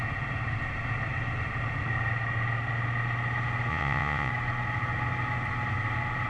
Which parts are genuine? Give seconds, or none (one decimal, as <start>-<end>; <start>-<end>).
0.0-3.7; 4.3-6.3